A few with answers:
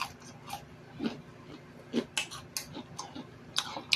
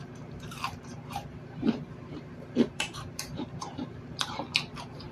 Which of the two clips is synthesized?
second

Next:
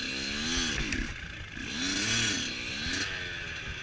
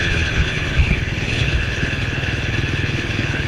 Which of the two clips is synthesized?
second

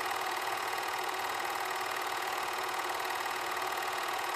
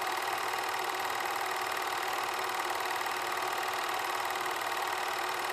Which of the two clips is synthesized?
first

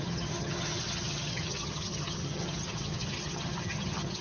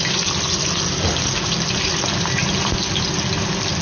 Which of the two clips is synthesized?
first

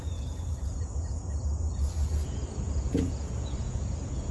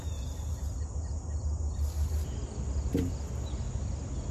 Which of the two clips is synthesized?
first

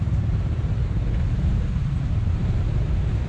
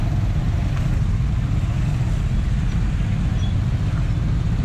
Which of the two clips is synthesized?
first